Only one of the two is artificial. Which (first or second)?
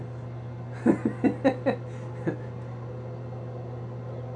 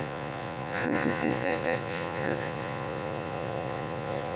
second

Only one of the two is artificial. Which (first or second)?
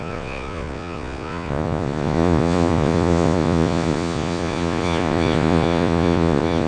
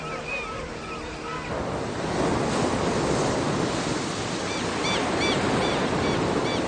first